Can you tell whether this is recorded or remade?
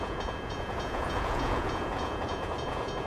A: remade